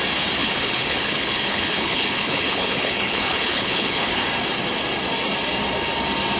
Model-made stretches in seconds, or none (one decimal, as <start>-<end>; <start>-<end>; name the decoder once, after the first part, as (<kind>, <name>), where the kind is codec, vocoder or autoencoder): 0.4-4.2 (codec, HILCodec)